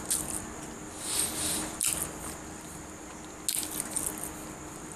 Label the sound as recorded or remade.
recorded